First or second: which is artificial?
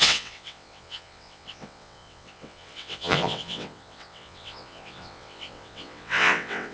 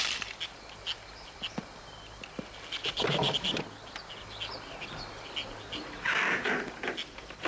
first